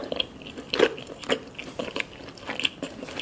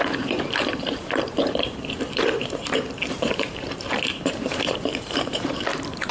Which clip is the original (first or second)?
first